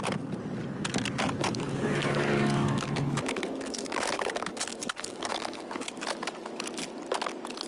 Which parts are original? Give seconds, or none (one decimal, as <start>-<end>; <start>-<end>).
0.0-1.4; 6.0-7.7